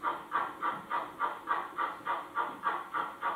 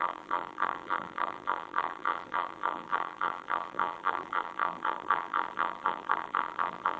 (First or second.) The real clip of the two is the first